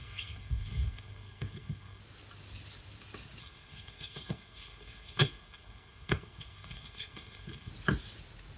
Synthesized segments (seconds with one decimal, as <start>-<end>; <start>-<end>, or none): 0.0-2.0; 3.4-7.7